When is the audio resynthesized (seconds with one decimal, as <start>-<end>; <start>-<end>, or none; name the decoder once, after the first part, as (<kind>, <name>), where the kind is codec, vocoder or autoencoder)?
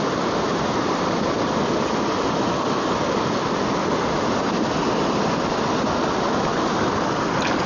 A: none